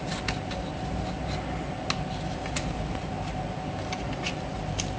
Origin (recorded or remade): recorded